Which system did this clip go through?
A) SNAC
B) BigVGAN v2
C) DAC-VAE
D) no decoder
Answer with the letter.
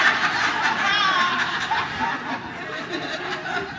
D